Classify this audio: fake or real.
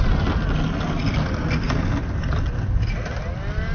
real